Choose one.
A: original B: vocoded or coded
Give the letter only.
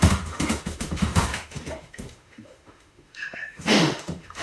B